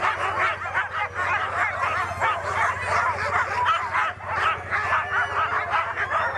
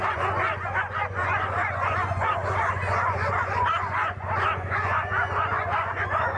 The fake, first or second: second